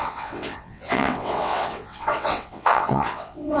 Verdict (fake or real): fake